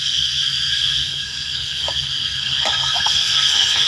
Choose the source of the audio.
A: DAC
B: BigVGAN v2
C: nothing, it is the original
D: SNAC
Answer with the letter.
D